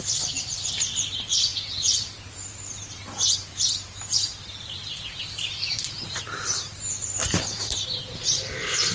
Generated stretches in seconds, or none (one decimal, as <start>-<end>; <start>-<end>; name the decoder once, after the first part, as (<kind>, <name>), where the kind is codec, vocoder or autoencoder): 0.0-8.9 (vocoder, BigVGAN v2)